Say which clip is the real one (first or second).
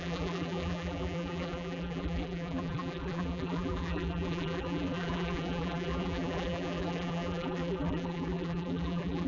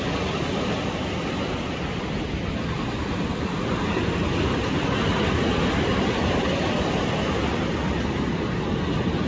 second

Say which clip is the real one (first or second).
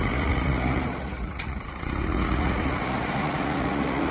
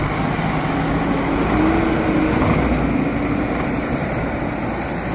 second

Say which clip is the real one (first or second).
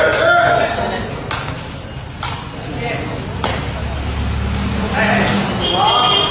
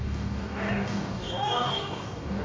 first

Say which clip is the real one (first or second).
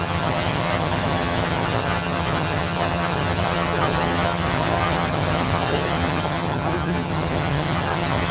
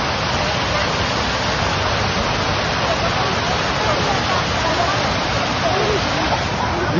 second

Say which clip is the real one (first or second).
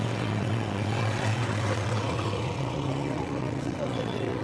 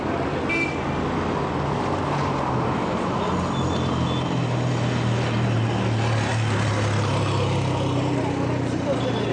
second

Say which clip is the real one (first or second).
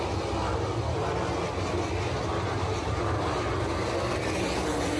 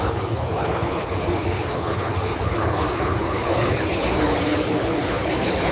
first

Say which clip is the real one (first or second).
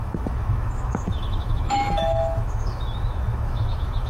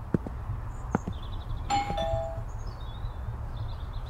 second